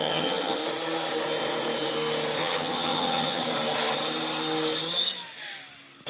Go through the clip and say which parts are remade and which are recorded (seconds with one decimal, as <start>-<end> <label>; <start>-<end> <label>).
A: 0.0-0.6 remade; 0.6-2.4 recorded; 2.4-3.4 remade; 3.4-6.1 recorded